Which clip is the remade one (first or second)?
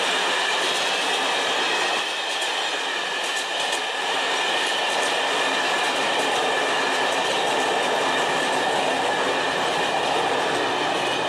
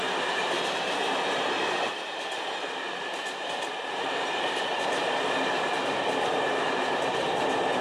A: second